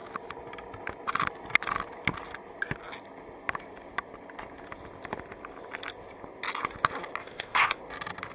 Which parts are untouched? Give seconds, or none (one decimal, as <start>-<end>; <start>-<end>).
0.0-7.2; 7.8-8.3